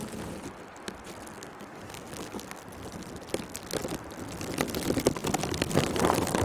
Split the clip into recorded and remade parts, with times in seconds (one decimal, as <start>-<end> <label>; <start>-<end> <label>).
0.0-1.3 recorded; 1.3-2.6 remade; 2.6-6.4 recorded